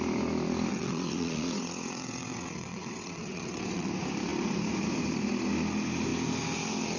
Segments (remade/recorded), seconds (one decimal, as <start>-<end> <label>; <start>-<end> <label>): 0.0-0.7 recorded; 0.7-3.9 remade; 3.9-7.0 recorded